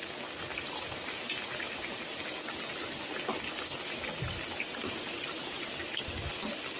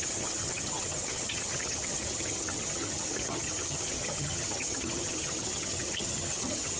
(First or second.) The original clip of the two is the first